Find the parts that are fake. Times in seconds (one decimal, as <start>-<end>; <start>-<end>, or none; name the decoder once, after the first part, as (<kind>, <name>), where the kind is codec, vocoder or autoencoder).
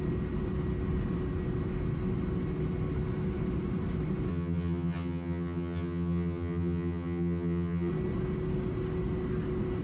4.3-7.9 (vocoder, HiFi-GAN)